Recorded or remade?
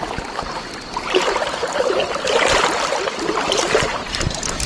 recorded